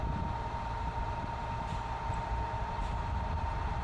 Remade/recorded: remade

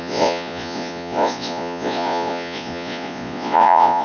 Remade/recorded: remade